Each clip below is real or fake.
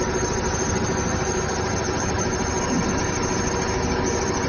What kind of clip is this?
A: real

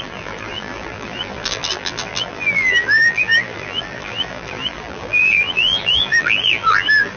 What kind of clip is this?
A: fake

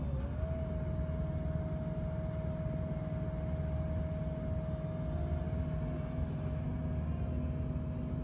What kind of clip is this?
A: real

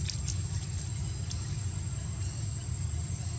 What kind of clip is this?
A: real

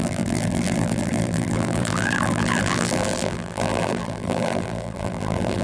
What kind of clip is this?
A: fake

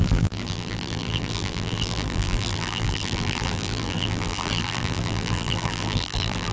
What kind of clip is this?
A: fake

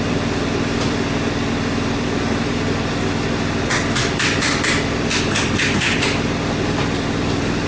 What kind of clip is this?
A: fake